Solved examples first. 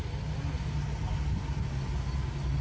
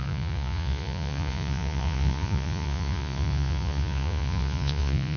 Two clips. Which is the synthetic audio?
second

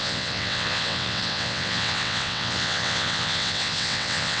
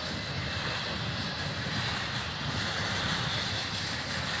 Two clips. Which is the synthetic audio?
first